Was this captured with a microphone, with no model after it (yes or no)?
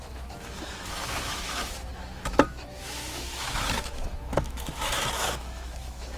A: no